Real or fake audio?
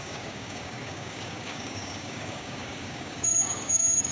fake